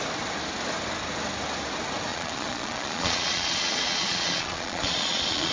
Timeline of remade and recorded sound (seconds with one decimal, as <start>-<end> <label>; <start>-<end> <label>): 0.0-2.1 recorded; 2.1-5.5 remade